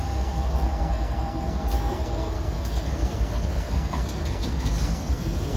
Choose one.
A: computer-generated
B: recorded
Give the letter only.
A